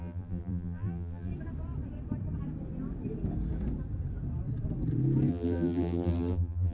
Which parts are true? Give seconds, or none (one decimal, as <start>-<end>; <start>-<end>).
1.3-5.3

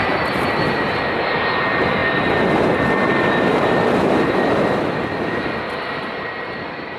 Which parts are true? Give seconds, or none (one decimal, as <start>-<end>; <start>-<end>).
0.0-7.0

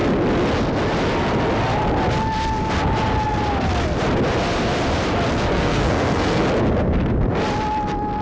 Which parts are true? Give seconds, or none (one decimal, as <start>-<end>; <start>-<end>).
0.0-5.5; 6.4-8.2

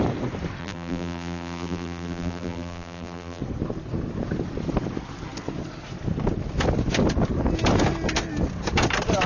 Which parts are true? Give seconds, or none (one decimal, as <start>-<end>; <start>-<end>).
0.0-0.6; 3.4-9.3

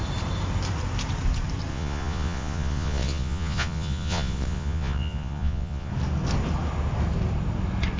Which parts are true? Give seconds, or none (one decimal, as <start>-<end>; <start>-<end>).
0.0-1.7; 5.9-8.0

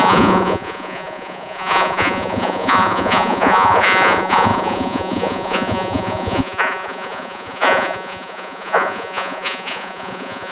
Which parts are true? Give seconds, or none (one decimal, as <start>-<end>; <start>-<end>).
none

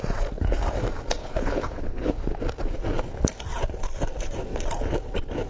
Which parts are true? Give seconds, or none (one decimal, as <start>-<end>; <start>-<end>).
0.0-1.2; 2.4-5.5

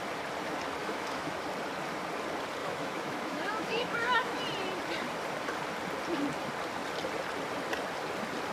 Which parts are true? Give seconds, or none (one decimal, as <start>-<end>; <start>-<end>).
0.0-0.8; 1.4-2.6; 4.4-8.5